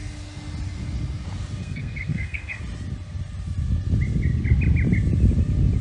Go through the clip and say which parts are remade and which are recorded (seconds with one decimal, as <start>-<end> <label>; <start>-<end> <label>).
0.0-1.6 recorded; 1.6-2.6 remade; 2.6-5.8 recorded